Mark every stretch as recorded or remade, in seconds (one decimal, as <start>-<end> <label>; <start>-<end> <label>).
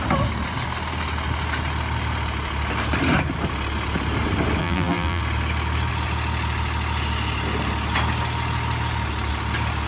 0.0-4.6 recorded; 4.6-5.2 remade; 5.2-9.9 recorded